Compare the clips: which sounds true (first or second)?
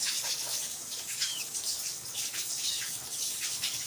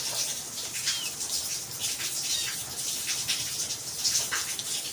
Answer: second